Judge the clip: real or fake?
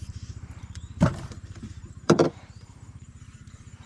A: fake